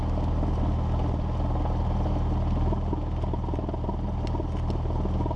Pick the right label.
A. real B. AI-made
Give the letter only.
A